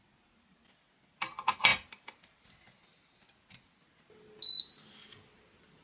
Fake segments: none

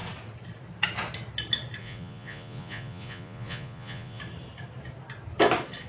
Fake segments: 1.8-4.2 (vocoder, Vocos)

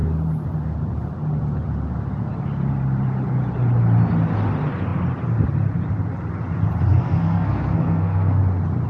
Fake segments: 6.9-8.4 (codec, SNAC)

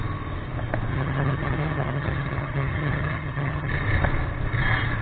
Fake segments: 0.9-3.7 (vocoder, HiFi-GAN)

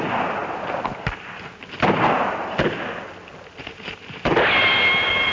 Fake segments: none

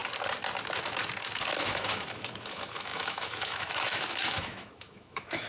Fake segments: 1.6-5.5 (autoencoder, DAC-VAE)